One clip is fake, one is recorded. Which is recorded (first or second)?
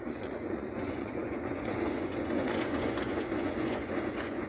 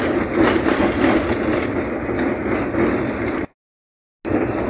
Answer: second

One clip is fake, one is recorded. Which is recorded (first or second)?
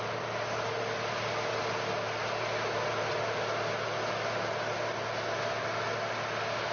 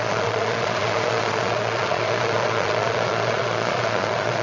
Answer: first